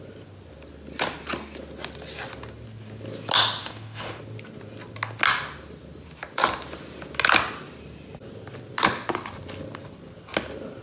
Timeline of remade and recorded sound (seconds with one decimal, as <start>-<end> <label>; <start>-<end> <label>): 0.0-3.6 recorded; 3.6-4.2 remade; 4.2-10.8 recorded